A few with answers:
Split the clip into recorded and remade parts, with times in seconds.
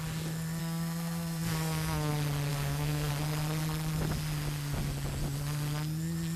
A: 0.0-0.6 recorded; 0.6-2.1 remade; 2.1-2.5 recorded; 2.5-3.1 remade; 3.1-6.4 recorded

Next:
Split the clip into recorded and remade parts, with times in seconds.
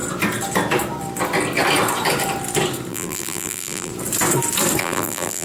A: 0.0-2.9 recorded; 2.9-3.9 remade; 3.9-4.8 recorded; 4.8-5.4 remade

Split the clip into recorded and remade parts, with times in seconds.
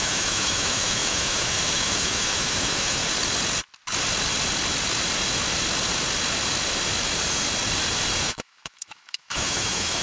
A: 0.0-3.0 remade; 3.0-8.2 recorded; 8.2-10.0 remade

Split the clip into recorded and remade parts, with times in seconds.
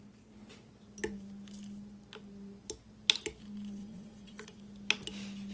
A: 0.0-3.8 recorded; 3.8-4.6 remade; 4.6-5.5 recorded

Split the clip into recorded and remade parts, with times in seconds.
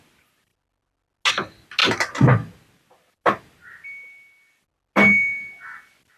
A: 0.0-6.2 recorded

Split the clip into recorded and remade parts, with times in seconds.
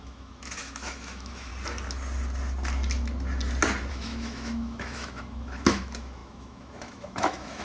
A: 0.0-1.5 remade; 1.5-3.9 recorded; 3.9-7.6 remade